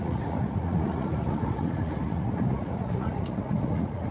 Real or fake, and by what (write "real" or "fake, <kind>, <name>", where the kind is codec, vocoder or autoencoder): fake, vocoder, Vocos